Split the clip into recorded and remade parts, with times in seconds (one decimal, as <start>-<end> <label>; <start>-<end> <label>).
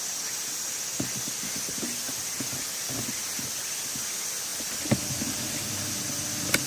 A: 0.0-6.7 recorded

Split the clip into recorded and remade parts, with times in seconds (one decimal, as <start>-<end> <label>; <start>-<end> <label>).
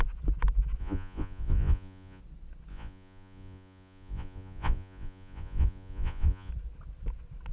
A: 0.0-0.8 recorded; 0.8-2.2 remade; 2.2-2.7 recorded; 2.7-6.5 remade; 6.5-7.5 recorded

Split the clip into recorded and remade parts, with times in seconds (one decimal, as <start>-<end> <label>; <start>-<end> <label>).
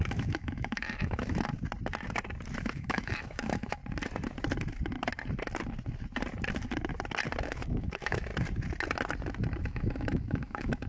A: 0.0-1.5 remade; 1.5-2.6 recorded; 2.6-3.8 remade; 3.8-7.4 recorded; 7.4-8.3 remade; 8.3-9.6 recorded; 9.6-10.9 remade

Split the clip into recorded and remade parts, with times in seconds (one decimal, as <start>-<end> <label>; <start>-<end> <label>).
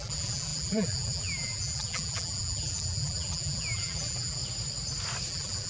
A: 0.0-4.4 remade; 4.4-5.3 recorded; 5.3-5.7 remade